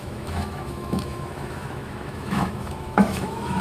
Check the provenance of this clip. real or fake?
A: fake